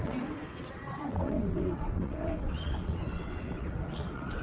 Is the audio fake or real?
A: fake